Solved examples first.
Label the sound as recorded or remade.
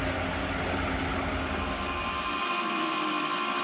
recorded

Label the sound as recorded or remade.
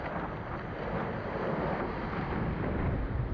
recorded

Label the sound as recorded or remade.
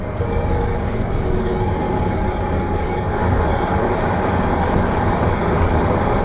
remade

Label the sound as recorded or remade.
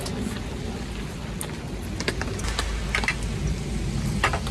recorded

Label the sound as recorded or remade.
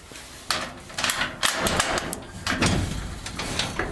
recorded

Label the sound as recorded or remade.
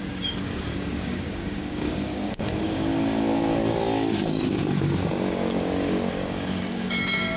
remade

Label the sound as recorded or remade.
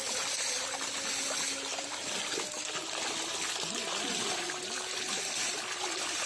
recorded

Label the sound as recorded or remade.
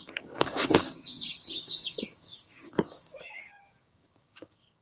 remade